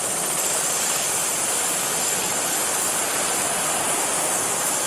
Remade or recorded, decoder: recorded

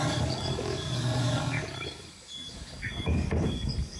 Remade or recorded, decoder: remade, codec, DAC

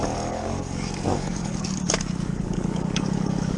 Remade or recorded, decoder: remade, codec, DAC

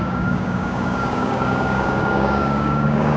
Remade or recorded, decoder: remade, codec, DAC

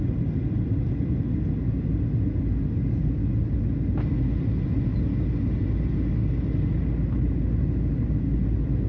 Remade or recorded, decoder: recorded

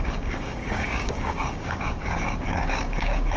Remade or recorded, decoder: remade, codec, DAC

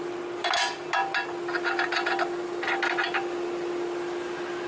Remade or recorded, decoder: recorded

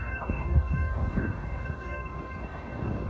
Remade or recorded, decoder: remade, codec, DAC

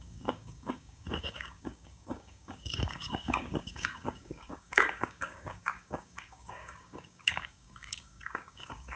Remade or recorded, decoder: remade, codec, DAC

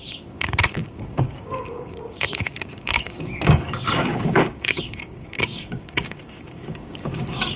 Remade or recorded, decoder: remade, codec, DAC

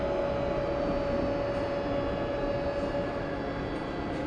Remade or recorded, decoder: recorded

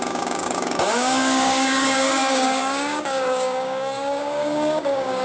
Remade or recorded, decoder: remade, codec, DAC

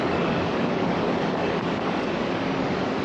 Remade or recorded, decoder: remade, codec, DAC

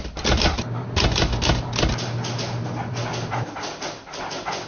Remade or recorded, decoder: recorded